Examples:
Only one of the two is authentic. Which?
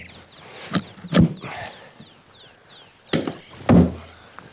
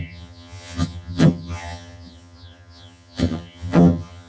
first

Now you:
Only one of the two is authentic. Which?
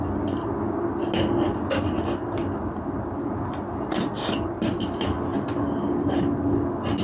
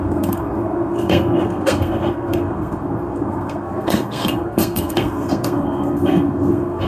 first